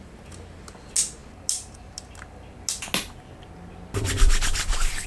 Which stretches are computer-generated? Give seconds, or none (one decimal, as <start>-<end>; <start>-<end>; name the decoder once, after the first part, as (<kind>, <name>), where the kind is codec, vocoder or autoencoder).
none